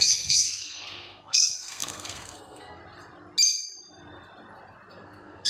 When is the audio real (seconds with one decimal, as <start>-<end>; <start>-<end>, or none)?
2.8-4.9